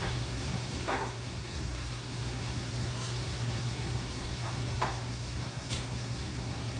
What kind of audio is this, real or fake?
fake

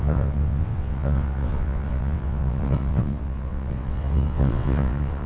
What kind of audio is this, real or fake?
fake